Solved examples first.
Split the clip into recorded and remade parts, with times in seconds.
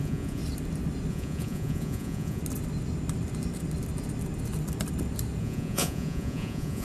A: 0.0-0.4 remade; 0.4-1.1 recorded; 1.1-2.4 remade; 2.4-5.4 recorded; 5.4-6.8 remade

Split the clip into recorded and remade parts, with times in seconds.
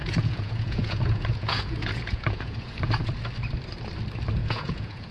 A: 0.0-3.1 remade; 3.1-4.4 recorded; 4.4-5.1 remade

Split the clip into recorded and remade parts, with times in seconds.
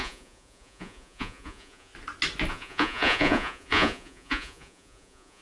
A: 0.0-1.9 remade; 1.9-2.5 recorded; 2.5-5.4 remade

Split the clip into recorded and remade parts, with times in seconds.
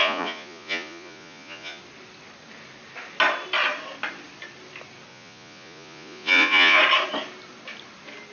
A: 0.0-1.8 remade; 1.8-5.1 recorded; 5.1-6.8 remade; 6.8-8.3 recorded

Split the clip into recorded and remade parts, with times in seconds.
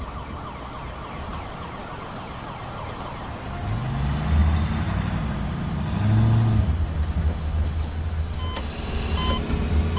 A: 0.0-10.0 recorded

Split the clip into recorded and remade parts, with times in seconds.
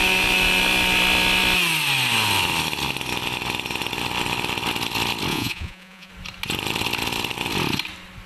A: 0.0-5.3 recorded; 5.3-6.1 remade; 6.1-8.3 recorded